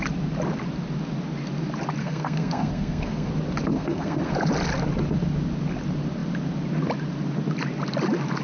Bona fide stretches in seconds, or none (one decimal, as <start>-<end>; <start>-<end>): 0.0-2.0; 3.3-3.7; 4.3-8.4